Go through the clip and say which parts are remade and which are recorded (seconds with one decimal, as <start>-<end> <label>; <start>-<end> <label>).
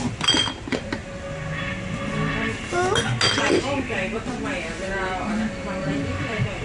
0.0-1.0 remade; 1.0-3.4 recorded; 3.4-6.6 remade